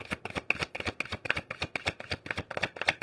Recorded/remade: recorded